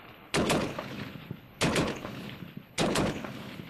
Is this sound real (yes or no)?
no